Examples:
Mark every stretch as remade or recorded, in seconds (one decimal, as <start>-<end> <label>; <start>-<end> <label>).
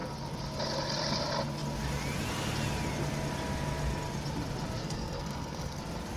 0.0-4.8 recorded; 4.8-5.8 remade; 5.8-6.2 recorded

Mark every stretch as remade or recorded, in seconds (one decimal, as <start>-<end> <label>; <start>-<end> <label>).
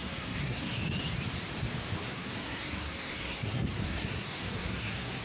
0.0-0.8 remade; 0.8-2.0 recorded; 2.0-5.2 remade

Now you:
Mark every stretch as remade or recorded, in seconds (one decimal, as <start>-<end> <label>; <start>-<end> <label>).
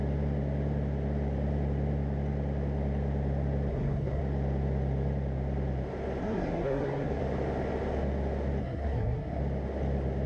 0.0-3.7 recorded; 3.7-4.2 remade; 4.2-6.2 recorded; 6.2-7.2 remade; 7.2-8.6 recorded; 8.6-9.4 remade; 9.4-10.3 recorded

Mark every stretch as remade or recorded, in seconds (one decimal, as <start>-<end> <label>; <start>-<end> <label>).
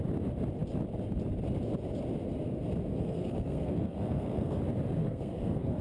0.0-2.9 recorded; 2.9-4.6 remade; 4.6-5.0 recorded; 5.0-5.8 remade